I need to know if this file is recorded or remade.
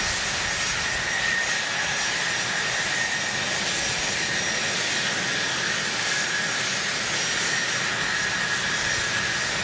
recorded